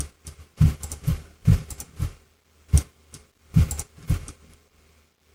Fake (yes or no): no